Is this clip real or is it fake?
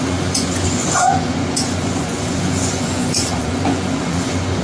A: fake